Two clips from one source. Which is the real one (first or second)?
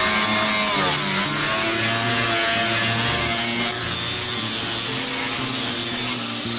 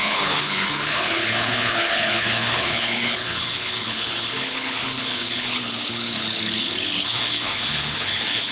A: first